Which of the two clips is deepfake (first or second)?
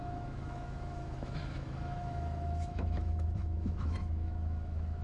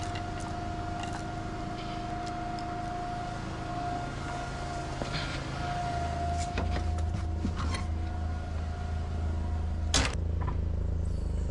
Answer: first